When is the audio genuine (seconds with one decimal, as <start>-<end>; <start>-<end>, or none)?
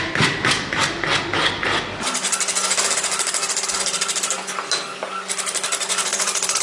0.0-5.9